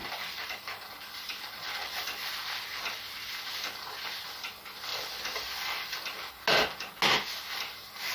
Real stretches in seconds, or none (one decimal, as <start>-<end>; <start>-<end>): 2.3-4.9; 6.3-8.1